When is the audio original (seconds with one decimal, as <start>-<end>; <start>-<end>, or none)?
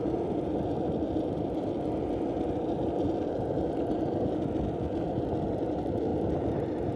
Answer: 0.0-7.0